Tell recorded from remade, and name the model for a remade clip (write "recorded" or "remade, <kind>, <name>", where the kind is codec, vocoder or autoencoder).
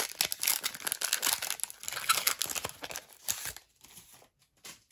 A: recorded